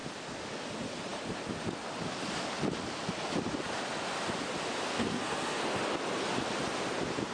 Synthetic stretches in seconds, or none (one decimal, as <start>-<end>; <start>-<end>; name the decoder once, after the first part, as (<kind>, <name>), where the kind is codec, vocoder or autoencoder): 4.9-5.6 (codec, SNAC)